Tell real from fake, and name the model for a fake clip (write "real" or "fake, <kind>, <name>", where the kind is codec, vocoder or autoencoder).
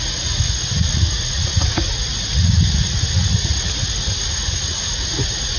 fake, vocoder, Vocos